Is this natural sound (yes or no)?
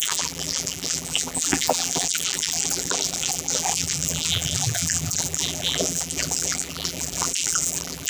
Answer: no